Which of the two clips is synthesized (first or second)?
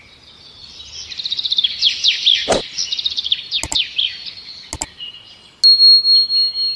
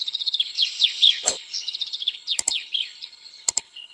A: second